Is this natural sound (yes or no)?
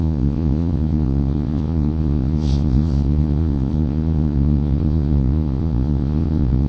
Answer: no